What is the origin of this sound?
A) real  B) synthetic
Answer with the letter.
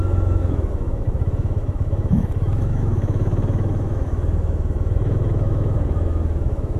B